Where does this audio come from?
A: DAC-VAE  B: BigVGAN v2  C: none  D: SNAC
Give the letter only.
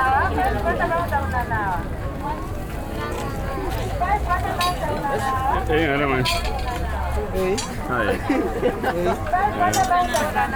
C